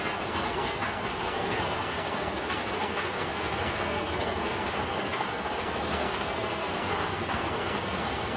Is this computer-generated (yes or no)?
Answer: yes